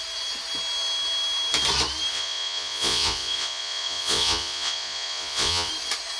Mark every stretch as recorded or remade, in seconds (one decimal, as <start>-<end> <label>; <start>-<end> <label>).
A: 0.0-2.1 recorded; 2.1-5.7 remade; 5.7-6.2 recorded